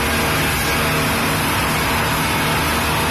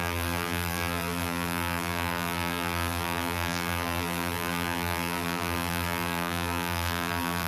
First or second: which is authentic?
first